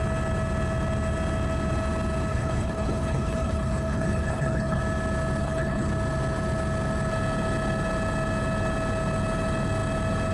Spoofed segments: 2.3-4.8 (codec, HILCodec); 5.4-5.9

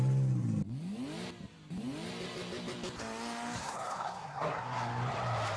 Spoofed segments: 3.6-4.9 (codec, SNAC)

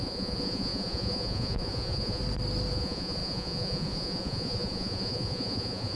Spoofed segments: 0.0-2.2 (vocoder, Vocos); 2.7-6.0

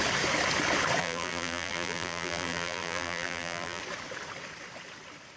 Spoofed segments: 1.0-3.8 (vocoder, BigVGAN v2)

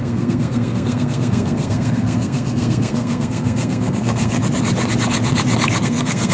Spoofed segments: 0.0-4.4 (codec, SNAC); 5.8-6.3

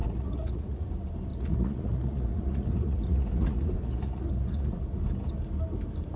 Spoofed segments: 0.0-0.9 (vocoder, Vocos); 1.3-5.0